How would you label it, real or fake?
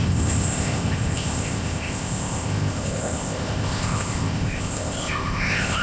fake